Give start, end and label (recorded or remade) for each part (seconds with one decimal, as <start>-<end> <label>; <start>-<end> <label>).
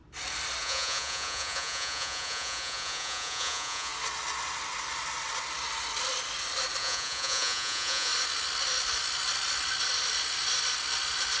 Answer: 0.0-0.6 recorded; 0.6-3.9 remade; 3.9-6.8 recorded; 6.8-8.1 remade; 8.1-11.4 recorded